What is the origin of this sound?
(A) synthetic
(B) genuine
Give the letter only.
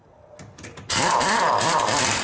B